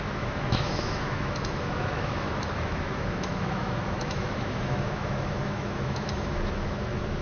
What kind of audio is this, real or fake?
fake